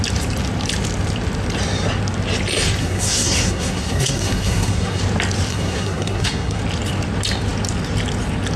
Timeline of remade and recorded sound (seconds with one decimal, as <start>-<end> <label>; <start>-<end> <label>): 0.0-2.8 recorded; 2.8-5.0 remade; 5.0-5.5 recorded; 5.5-6.6 remade; 6.6-8.6 recorded